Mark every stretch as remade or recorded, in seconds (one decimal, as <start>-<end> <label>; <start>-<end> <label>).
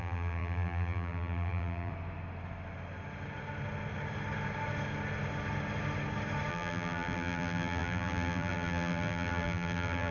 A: 0.0-1.9 remade; 1.9-6.5 recorded; 6.5-10.1 remade